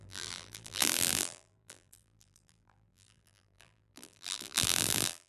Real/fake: fake